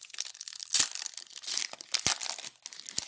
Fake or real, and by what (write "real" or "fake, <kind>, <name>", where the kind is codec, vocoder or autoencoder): real